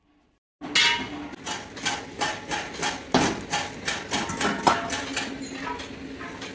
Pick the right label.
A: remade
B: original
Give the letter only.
B